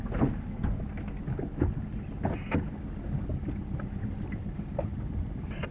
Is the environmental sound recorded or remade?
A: recorded